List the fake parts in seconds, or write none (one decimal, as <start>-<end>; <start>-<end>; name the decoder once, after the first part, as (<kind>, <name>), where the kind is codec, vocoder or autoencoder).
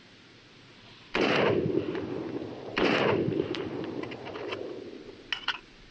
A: 0.7-2.0 (vocoder, BigVGAN v2); 2.4-4.9